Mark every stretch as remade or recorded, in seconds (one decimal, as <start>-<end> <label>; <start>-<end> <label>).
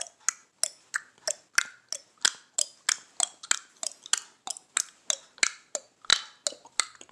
0.0-7.1 recorded